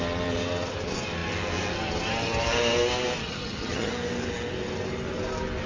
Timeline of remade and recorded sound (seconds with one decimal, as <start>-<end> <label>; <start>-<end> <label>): 0.0-3.2 recorded; 3.2-3.9 remade; 3.9-5.7 recorded